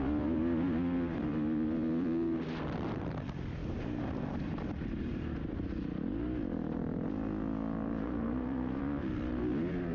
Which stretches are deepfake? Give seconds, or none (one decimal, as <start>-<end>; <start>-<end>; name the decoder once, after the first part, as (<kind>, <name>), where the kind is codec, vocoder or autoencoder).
8.0-8.8 (codec, SNAC)